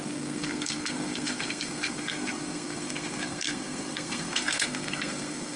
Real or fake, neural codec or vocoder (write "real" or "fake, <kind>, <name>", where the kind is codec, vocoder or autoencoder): fake, codec, SNAC